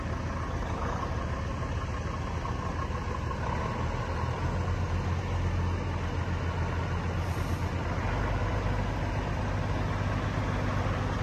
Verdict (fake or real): real